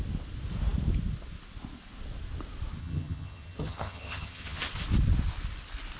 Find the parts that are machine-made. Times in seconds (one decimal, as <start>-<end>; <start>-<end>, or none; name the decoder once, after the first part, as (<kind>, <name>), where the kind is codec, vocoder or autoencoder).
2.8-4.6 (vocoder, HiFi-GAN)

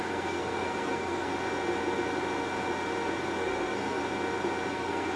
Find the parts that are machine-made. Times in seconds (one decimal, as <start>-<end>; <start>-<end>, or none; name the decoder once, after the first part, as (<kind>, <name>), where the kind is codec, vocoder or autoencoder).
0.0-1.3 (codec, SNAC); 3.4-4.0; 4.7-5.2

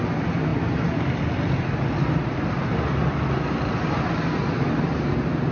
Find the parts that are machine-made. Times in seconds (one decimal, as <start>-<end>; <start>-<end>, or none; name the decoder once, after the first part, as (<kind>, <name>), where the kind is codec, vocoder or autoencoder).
none

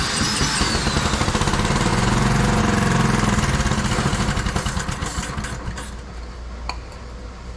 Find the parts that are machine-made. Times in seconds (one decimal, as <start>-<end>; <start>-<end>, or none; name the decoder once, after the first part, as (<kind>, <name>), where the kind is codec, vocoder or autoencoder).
1.9-2.6 (vocoder, Vocos)

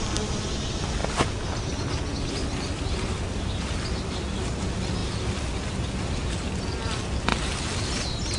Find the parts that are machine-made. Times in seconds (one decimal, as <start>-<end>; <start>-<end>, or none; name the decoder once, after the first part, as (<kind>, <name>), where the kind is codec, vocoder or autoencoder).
none

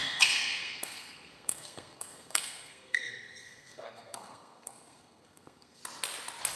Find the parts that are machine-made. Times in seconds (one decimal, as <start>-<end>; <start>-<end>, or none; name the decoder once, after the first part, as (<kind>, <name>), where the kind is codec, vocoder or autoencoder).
0.0-5.8 (codec, SNAC)

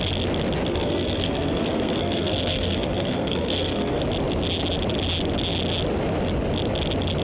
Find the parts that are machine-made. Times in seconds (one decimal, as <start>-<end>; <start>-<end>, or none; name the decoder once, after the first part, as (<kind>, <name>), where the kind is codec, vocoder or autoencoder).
0.7-4.0 (codec, SNAC)